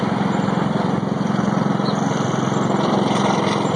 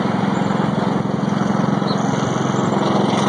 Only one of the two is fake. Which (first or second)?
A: first